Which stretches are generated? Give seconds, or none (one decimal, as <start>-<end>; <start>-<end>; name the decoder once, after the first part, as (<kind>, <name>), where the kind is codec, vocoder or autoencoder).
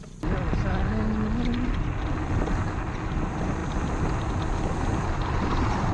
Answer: none